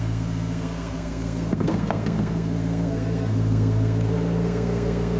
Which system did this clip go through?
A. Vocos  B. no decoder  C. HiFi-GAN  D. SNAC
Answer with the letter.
D